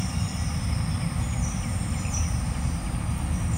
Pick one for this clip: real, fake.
real